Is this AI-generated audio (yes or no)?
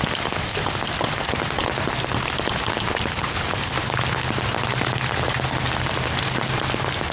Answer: no